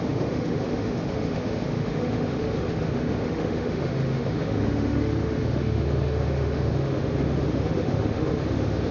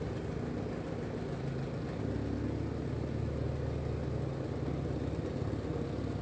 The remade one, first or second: first